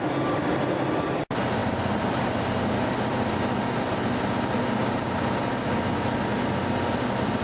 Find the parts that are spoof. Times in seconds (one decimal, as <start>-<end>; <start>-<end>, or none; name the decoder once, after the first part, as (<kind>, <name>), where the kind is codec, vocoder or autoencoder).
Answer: none